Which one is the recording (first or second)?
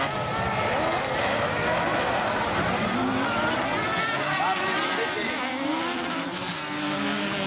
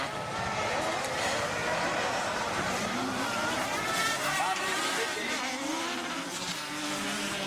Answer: first